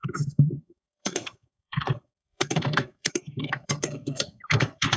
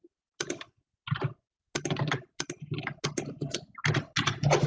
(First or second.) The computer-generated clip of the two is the first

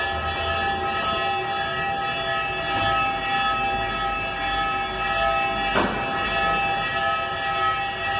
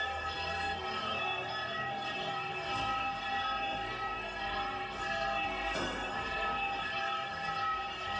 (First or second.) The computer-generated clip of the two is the second